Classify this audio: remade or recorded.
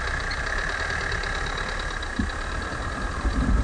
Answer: recorded